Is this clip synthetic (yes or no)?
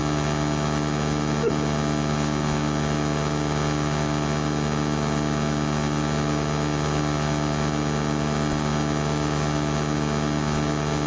no